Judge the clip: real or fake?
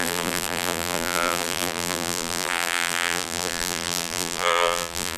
fake